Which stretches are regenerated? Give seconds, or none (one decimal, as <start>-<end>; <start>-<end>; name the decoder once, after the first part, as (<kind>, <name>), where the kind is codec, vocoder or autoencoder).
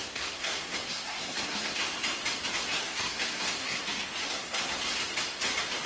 0.0-1.8 (codec, SNAC); 2.6-3.8; 4.2-5.1